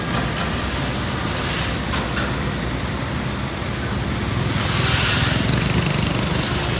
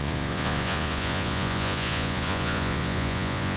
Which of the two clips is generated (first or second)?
second